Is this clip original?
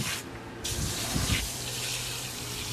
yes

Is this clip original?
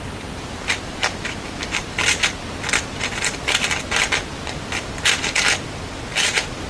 no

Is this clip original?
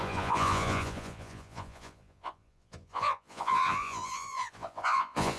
no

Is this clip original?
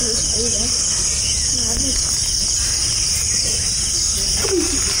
yes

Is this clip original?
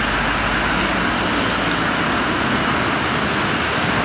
yes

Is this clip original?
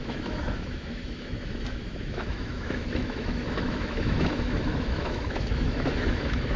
no